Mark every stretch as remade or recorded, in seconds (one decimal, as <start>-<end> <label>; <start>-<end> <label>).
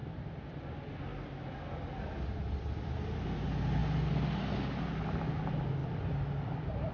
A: 0.0-0.6 remade; 0.6-1.1 recorded; 1.1-2.8 remade; 2.8-5.8 recorded; 5.8-6.9 remade